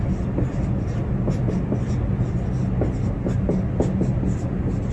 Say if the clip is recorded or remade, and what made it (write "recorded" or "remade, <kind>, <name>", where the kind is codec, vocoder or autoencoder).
recorded